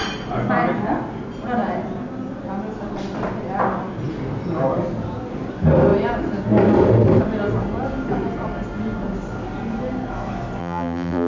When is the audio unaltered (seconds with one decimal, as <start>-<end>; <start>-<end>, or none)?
0.0-10.6